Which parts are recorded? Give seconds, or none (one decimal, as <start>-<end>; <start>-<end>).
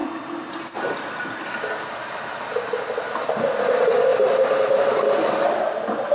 0.0-6.1